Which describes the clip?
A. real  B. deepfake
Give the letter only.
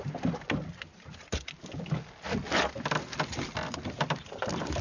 A